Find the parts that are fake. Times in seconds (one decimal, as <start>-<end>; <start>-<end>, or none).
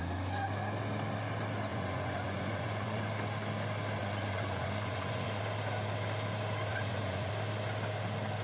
1.7-3.0; 4.0-5.4; 6.7-7.3